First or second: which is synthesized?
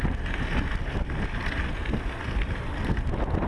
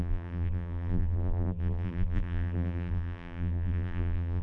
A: second